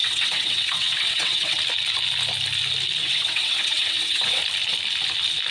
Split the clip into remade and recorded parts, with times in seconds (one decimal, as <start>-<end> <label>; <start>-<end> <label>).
0.0-1.6 remade; 1.6-3.0 recorded; 3.0-4.4 remade; 4.4-5.5 recorded